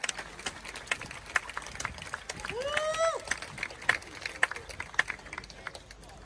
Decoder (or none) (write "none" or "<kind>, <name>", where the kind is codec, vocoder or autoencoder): none